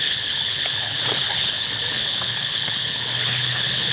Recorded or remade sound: remade